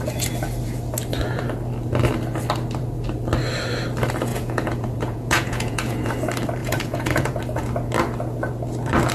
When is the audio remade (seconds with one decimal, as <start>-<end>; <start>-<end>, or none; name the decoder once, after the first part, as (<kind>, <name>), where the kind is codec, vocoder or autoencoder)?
4.3-6.1 (vocoder, Vocos); 6.6-7.4